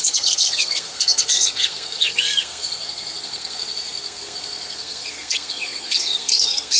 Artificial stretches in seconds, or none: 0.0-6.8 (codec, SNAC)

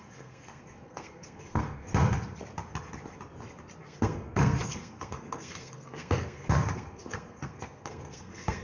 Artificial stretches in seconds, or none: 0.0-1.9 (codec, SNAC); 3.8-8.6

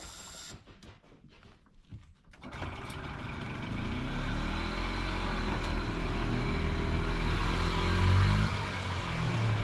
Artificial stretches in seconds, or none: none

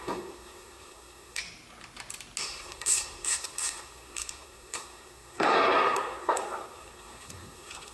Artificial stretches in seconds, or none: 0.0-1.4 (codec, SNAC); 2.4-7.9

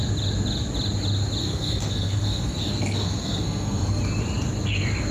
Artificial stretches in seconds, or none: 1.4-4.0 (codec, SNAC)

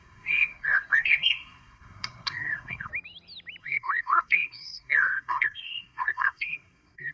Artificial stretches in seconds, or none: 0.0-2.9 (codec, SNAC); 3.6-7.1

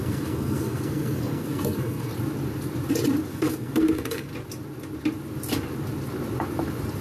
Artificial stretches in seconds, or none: 0.0-2.1 (codec, SNAC); 3.3-4.3

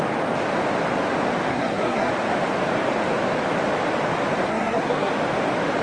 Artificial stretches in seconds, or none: 1.5-2.1 (codec, SNAC); 4.5-5.1